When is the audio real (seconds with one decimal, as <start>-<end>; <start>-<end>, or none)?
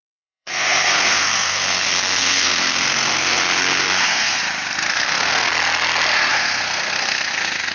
4.4-4.9; 5.5-6.3